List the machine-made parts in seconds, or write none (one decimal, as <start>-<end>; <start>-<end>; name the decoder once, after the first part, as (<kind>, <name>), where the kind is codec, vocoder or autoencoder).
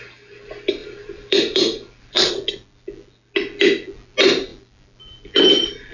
0.8-2.3 (vocoder, BigVGAN v2); 4.5-5.9